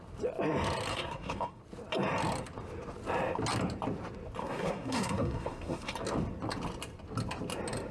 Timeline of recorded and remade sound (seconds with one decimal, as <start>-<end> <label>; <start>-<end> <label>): 0.0-0.9 recorded; 0.9-1.6 remade; 1.6-4.4 recorded; 4.4-5.9 remade; 5.9-7.9 recorded

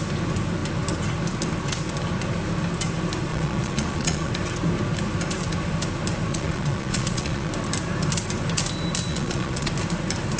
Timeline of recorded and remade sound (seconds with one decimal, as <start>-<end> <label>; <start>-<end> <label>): 0.0-3.3 recorded; 3.3-4.3 remade; 4.3-6.3 recorded; 6.3-7.5 remade; 7.5-9.1 recorded; 9.1-9.7 remade; 9.7-10.4 recorded

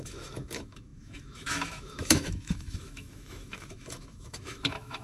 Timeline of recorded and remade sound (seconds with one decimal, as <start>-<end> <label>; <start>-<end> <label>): 0.0-5.0 remade

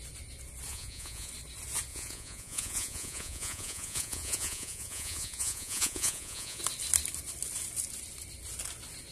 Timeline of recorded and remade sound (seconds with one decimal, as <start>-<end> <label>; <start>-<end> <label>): 0.0-0.7 recorded; 0.7-1.3 remade; 1.3-1.9 recorded; 1.9-6.6 remade; 6.6-9.1 recorded